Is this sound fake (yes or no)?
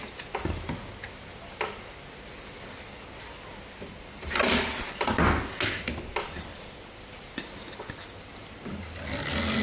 no